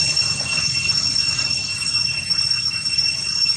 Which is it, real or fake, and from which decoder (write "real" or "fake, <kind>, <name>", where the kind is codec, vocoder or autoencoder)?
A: real